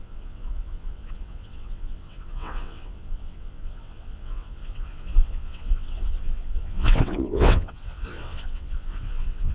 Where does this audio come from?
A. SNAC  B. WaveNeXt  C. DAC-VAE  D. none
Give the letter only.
B